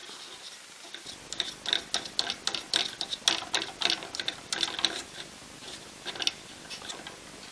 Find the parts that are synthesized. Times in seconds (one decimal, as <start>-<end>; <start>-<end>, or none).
none